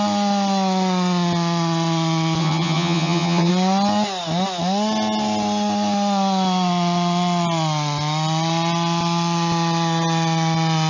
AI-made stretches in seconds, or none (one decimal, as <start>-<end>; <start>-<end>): 2.4-3.5